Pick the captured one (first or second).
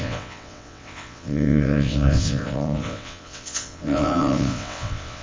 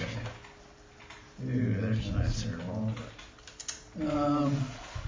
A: second